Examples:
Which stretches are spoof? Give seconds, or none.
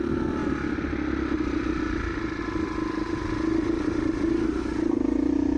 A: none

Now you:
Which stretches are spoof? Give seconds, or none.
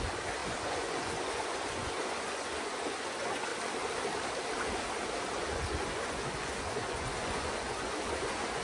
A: 0.0-3.5; 5.3-8.6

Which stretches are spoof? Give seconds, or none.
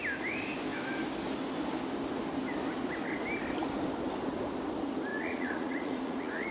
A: 5.1-6.5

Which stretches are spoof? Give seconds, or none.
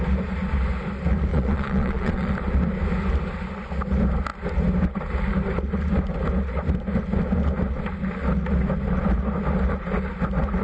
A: 1.3-2.3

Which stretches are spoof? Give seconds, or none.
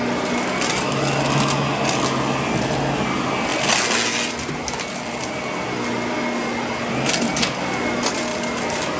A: none